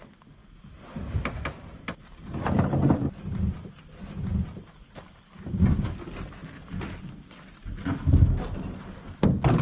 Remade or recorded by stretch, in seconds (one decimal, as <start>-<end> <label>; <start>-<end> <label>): 0.0-9.6 recorded